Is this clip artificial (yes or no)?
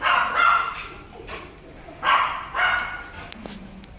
no